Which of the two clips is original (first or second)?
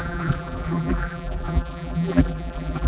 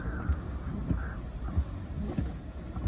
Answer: second